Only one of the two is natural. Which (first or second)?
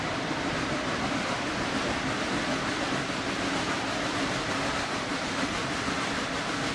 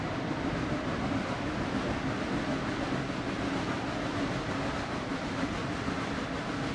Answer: second